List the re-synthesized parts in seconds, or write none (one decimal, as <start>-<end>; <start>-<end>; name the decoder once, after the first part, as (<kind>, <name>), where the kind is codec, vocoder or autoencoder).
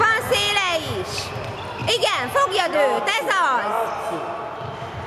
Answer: none